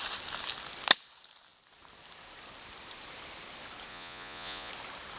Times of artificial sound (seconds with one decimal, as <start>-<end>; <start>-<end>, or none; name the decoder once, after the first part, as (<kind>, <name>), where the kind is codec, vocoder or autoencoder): 3.9-4.7 (vocoder, Vocos)